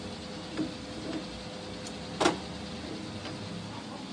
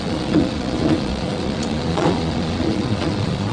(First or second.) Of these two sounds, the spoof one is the second